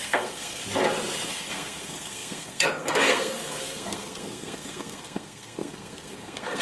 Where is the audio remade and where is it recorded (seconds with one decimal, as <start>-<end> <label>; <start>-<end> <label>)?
0.0-0.6 remade; 0.6-1.3 recorded; 1.3-6.6 remade